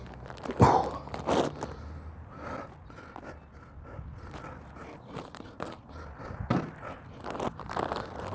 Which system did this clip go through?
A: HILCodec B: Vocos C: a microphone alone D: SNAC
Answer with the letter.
C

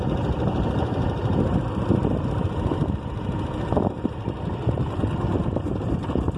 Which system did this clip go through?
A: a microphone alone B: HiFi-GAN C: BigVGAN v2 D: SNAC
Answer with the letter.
A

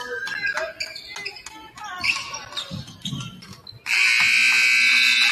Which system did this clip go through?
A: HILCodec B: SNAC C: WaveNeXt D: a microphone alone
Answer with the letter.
D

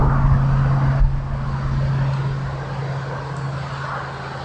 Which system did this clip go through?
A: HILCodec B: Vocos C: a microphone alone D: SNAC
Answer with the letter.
C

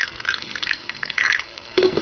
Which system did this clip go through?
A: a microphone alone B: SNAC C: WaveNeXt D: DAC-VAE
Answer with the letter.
B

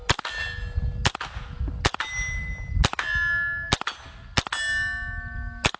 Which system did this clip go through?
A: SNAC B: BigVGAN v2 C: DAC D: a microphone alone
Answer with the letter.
D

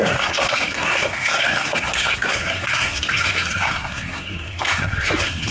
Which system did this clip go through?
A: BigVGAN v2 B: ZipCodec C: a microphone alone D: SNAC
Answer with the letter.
D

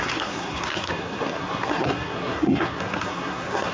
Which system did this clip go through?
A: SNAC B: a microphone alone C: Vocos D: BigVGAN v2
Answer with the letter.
A